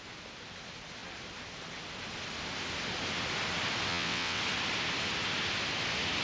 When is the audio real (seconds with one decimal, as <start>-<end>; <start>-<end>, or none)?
0.0-3.9; 4.4-6.2